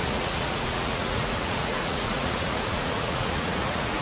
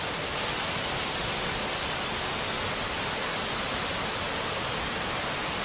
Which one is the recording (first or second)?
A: second